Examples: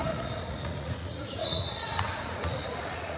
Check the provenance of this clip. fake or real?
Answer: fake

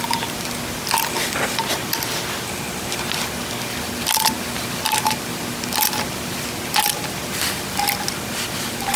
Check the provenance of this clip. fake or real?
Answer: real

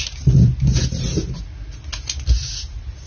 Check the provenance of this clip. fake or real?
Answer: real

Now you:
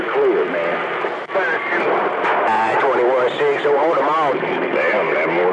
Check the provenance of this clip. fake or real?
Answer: real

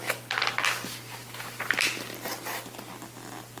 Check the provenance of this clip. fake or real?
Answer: real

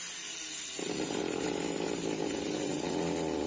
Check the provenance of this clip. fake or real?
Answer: real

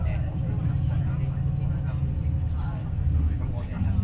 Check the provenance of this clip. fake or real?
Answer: real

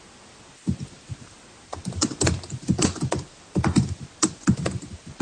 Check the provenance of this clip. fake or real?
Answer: real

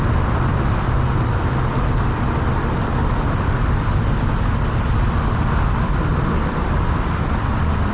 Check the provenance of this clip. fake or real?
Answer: real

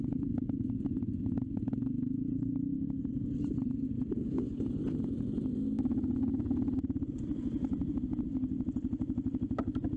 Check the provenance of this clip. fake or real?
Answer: real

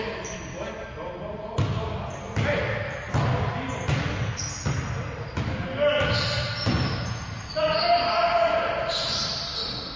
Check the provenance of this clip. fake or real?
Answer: real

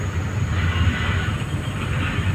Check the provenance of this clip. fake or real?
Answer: real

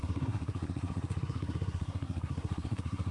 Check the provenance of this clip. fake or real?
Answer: fake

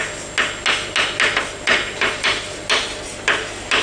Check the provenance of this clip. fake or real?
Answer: real